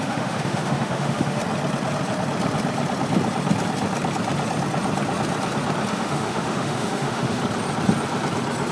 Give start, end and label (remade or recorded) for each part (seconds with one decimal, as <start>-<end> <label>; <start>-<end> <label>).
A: 0.0-1.4 remade; 1.4-5.9 recorded; 5.9-7.4 remade; 7.4-8.7 recorded